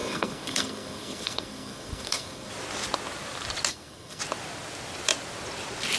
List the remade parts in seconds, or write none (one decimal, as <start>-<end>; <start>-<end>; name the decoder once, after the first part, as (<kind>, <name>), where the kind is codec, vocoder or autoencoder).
0.0-2.5 (codec, SNAC); 3.7-4.2